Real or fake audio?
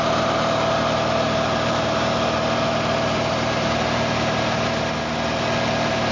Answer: real